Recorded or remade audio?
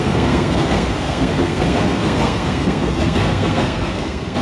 remade